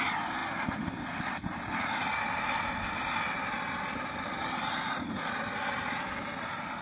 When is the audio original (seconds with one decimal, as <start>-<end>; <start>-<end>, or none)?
0.0-6.8